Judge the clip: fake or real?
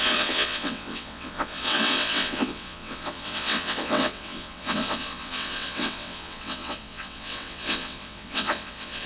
fake